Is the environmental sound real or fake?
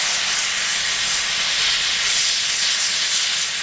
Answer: real